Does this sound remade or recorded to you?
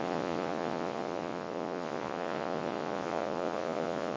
remade